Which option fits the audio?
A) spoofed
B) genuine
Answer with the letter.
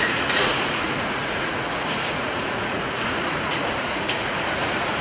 A